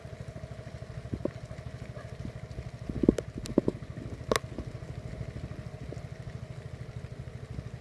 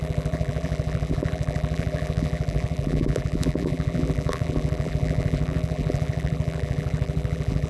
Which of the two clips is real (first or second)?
first